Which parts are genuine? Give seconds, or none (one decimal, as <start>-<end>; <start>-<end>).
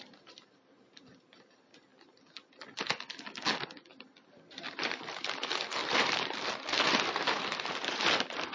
1.9-4.5